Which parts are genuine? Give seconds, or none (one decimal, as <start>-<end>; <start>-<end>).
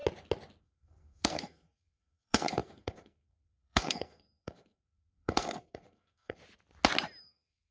0.0-0.6; 6.4-7.2